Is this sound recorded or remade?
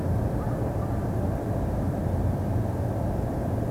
recorded